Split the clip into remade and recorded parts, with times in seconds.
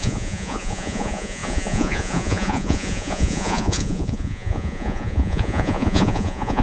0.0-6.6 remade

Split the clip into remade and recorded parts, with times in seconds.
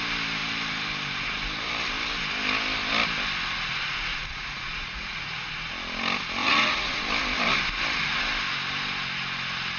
0.0-4.1 recorded; 4.1-5.5 remade; 5.5-6.4 recorded; 6.4-7.0 remade; 7.0-9.8 recorded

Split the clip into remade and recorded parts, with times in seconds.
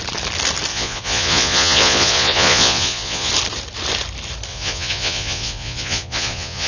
0.0-0.7 recorded; 0.7-3.3 remade; 3.3-4.5 recorded; 4.5-6.7 remade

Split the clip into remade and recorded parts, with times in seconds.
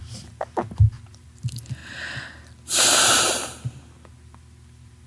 0.0-5.1 recorded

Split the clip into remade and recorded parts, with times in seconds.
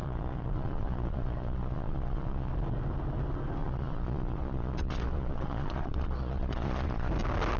0.0-2.5 remade; 2.5-3.6 recorded; 3.6-7.1 remade; 7.1-7.6 recorded